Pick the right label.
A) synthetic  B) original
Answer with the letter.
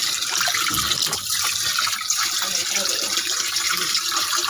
B